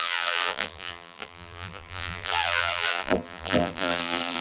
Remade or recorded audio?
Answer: remade